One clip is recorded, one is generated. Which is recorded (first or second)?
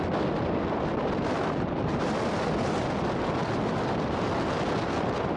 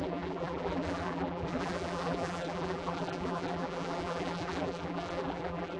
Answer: first